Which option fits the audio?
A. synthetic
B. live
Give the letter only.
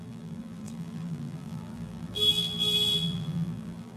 A